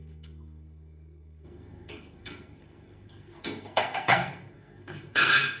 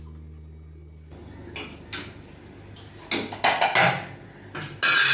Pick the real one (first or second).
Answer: second